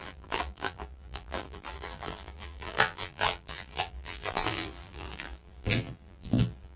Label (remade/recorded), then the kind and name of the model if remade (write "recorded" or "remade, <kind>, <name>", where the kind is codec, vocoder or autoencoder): remade, vocoder, BigVGAN v2